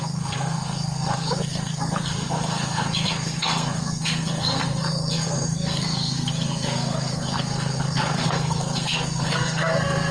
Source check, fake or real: fake